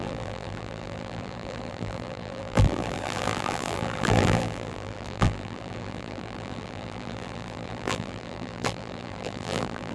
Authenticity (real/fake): fake